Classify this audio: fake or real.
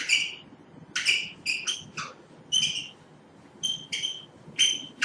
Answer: real